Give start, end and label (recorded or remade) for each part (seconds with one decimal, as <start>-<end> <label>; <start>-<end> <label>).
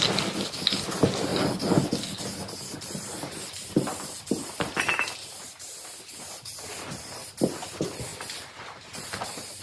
0.0-9.6 recorded